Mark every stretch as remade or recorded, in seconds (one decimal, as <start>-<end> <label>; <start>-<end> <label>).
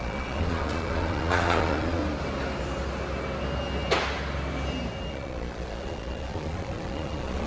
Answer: 0.0-2.0 remade; 2.0-5.1 recorded; 5.1-7.5 remade